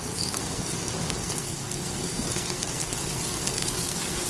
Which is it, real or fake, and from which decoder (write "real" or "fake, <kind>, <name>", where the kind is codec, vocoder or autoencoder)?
fake, codec, SNAC